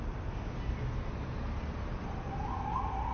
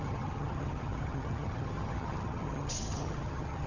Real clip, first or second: first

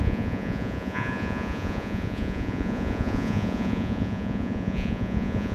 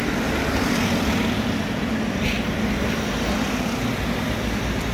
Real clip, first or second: second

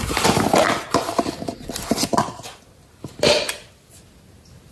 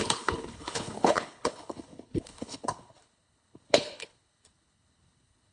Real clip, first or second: first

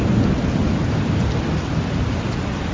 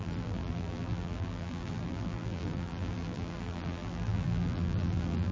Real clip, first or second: first